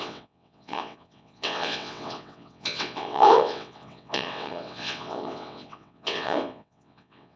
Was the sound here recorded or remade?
remade